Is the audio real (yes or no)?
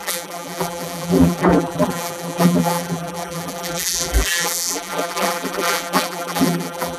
no